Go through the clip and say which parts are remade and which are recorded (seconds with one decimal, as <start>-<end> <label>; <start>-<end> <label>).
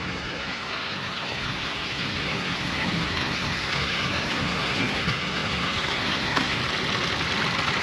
0.0-6.6 remade; 6.6-7.8 recorded